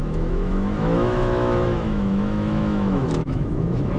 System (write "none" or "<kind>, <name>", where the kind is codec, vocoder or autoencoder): autoencoder, DAC-VAE